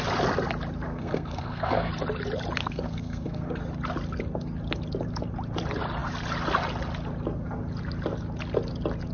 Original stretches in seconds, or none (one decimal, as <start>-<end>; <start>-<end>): 0.0-0.9; 1.9-2.6; 3.6-9.1